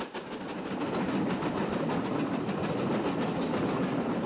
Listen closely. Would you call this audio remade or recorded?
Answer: recorded